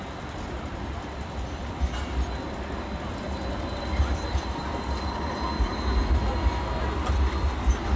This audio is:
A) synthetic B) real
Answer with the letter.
B